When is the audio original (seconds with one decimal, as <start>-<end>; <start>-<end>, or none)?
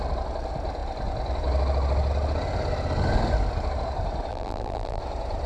0.0-4.3; 5.0-5.5